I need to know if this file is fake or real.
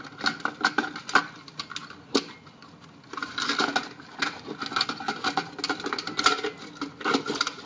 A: real